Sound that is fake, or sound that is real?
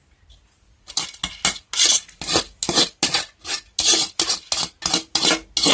real